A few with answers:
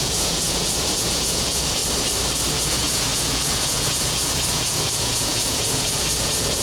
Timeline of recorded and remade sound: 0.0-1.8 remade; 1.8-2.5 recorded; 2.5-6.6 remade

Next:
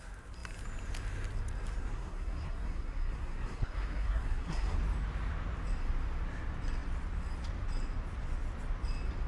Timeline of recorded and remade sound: 0.0-1.8 recorded; 1.8-4.8 remade; 4.8-9.3 recorded

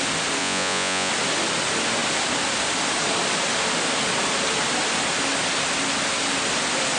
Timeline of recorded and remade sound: 0.0-0.4 recorded; 0.4-1.1 remade; 1.1-7.0 recorded

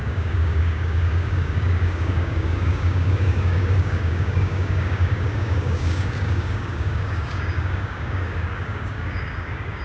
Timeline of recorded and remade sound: 0.0-9.8 remade

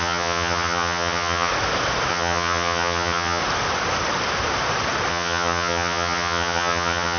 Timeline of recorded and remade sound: 0.0-1.5 remade; 1.5-2.1 recorded; 2.1-3.4 remade; 3.4-5.1 recorded; 5.1-7.2 remade